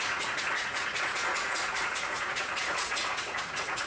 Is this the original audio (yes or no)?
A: no